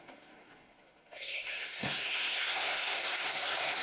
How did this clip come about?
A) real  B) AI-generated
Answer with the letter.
B